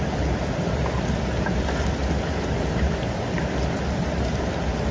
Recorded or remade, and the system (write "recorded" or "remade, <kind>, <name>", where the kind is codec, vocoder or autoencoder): recorded